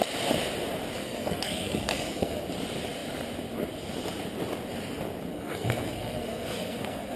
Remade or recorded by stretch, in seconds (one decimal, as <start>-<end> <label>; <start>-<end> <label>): 0.0-1.0 recorded; 1.0-2.4 remade; 2.4-5.3 recorded; 5.3-7.2 remade